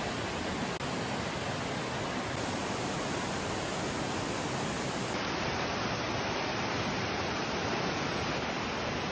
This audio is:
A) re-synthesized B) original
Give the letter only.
B